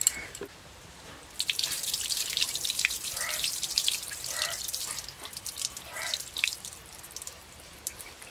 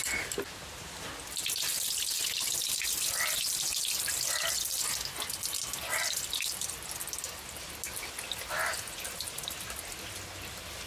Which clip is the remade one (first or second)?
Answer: first